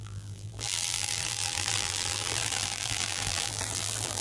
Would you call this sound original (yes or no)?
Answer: no